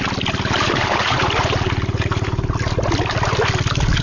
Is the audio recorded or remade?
recorded